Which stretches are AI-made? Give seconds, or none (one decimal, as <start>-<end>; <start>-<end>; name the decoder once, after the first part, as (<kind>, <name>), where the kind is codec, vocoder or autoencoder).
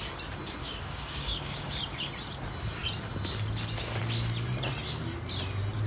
0.6-1.8 (codec, DAC)